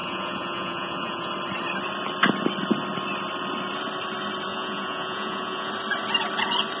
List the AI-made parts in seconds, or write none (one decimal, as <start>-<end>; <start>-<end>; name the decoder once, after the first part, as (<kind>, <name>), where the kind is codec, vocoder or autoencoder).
0.0-1.3 (vocoder, Vocos); 4.5-5.7